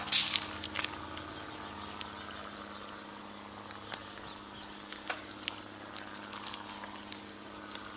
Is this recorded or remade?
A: recorded